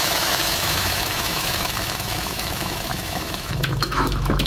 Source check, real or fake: fake